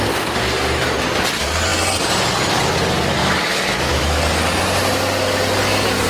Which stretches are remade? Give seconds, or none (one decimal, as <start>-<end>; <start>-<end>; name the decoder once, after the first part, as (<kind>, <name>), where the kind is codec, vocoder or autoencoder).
3.2-4.2 (autoencoder, DAC-VAE)